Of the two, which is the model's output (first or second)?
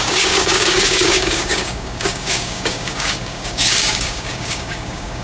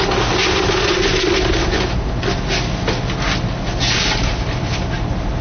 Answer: first